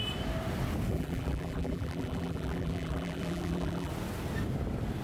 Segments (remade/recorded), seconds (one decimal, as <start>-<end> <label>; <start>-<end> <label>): 0.0-0.9 recorded; 0.9-3.9 remade; 3.9-5.0 recorded

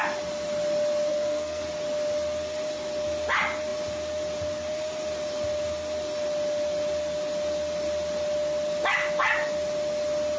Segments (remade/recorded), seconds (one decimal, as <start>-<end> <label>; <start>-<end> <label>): 0.0-1.1 recorded; 1.1-1.6 remade; 1.6-10.4 recorded

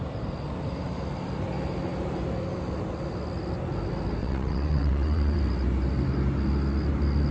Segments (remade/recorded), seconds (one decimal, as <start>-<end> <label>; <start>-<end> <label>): 0.0-4.2 recorded; 4.2-5.4 remade; 5.4-7.3 recorded

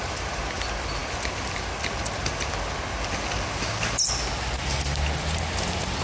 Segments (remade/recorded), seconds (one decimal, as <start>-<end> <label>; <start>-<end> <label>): 0.0-6.0 recorded

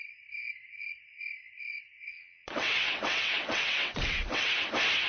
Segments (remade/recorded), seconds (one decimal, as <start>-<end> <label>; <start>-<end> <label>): 0.0-2.1 recorded; 2.1-4.5 remade; 4.5-5.1 recorded

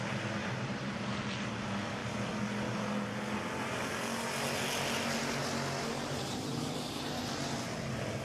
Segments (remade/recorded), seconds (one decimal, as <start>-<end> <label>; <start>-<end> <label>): 0.0-0.4 recorded; 0.4-1.2 remade; 1.2-5.9 recorded; 5.9-7.2 remade; 7.2-8.2 recorded

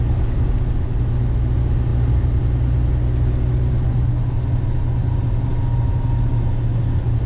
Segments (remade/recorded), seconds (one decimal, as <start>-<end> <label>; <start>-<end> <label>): 0.0-7.3 recorded

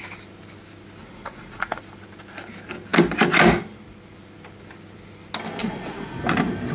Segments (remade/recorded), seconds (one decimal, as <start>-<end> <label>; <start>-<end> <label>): 0.0-1.0 recorded; 1.0-1.8 remade; 1.8-5.6 recorded; 5.6-6.2 remade; 6.2-6.7 recorded